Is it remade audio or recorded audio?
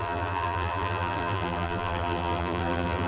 remade